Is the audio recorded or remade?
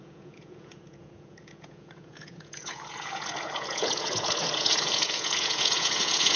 remade